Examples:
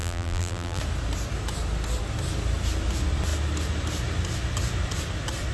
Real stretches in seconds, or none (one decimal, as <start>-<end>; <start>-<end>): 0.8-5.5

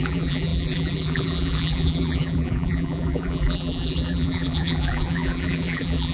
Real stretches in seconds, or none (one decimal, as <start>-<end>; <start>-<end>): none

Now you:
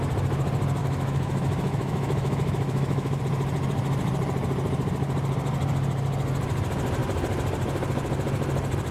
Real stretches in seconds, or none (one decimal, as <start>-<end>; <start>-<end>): 0.0-0.8; 3.2-8.9

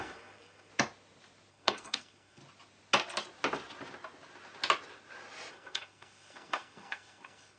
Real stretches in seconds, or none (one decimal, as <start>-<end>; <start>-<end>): 0.7-1.5; 2.4-5.5